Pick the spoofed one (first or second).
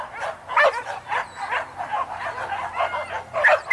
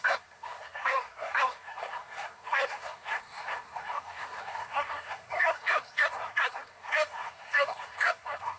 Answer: second